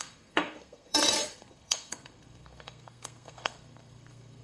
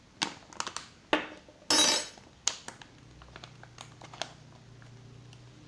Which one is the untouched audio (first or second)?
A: second